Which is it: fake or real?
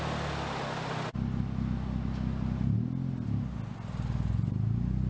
real